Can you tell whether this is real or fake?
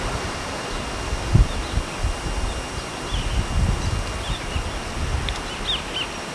real